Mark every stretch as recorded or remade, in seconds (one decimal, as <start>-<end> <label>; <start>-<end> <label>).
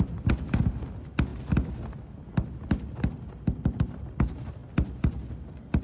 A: 0.0-5.8 recorded